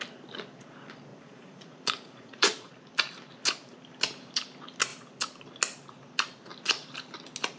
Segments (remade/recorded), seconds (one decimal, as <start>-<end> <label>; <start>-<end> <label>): 0.0-1.1 recorded; 1.1-2.7 remade; 2.7-7.6 recorded